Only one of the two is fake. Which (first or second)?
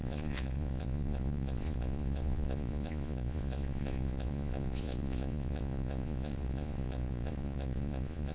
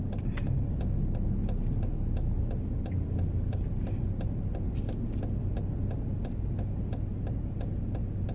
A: first